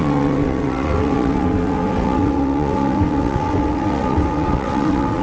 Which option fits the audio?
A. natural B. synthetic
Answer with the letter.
B